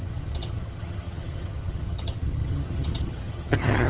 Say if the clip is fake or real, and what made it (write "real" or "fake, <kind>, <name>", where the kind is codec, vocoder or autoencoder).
fake, vocoder, HiFi-GAN